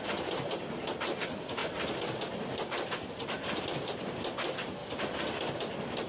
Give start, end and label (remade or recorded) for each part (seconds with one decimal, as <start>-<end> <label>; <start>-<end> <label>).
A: 0.0-1.6 recorded; 1.6-3.6 remade; 3.6-4.8 recorded; 4.8-6.1 remade